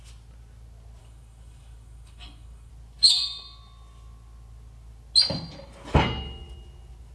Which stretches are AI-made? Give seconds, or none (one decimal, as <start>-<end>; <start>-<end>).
1.0-2.7